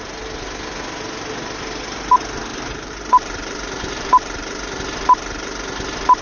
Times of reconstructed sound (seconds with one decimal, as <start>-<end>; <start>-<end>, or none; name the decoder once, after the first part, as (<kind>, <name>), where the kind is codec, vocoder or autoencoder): 2.5-4.8 (vocoder, BigVGAN v2)